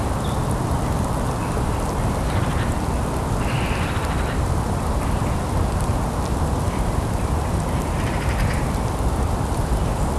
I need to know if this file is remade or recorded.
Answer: remade